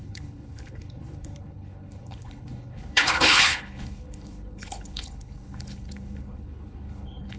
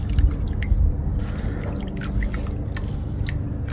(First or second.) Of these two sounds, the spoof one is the first